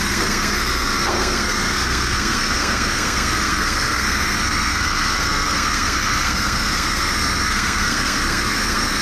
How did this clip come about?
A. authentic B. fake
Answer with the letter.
B